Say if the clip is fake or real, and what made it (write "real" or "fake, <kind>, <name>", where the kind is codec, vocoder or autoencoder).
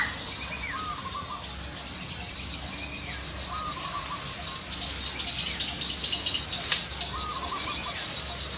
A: real